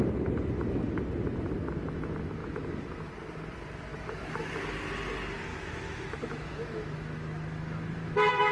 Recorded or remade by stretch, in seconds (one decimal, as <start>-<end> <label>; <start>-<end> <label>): 0.0-2.4 recorded; 2.4-3.1 remade; 3.1-3.9 recorded; 3.9-4.5 remade; 4.5-5.5 recorded; 5.5-8.5 remade